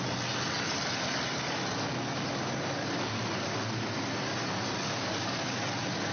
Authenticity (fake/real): real